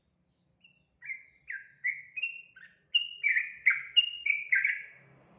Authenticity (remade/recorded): recorded